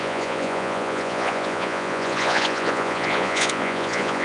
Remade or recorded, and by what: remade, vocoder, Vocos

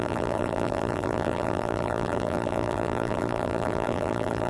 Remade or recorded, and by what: remade, vocoder, BigVGAN v2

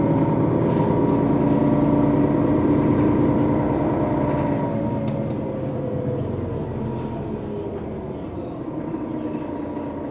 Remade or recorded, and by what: recorded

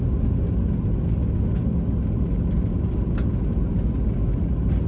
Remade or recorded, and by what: recorded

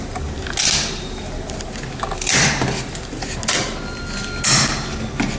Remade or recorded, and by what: recorded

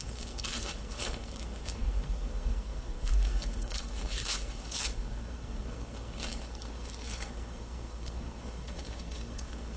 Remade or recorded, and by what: remade, codec, SNAC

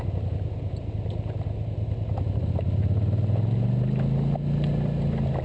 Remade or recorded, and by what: recorded